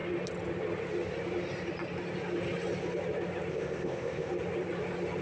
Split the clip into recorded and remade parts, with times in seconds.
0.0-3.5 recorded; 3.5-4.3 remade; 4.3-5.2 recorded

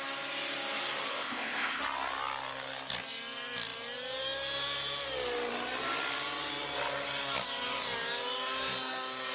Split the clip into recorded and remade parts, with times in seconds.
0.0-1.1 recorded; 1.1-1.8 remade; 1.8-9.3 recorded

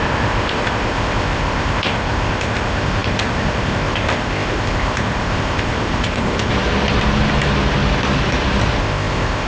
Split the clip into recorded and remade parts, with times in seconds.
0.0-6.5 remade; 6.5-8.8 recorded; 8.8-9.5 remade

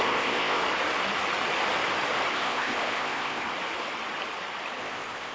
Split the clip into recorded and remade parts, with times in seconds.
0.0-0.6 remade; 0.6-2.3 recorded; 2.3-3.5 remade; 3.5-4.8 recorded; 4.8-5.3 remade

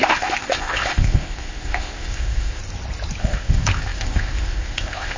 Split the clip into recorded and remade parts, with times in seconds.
0.0-2.6 remade; 2.6-3.2 recorded; 3.2-5.2 remade

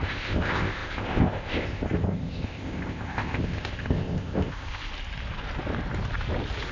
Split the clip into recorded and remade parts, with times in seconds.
0.0-4.9 remade; 4.9-6.7 recorded